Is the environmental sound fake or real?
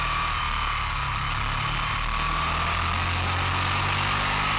real